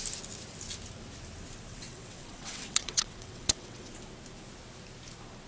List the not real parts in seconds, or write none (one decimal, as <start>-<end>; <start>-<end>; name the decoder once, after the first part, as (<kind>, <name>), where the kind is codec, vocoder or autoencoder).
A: 1.7-3.9 (vocoder, WaveNeXt)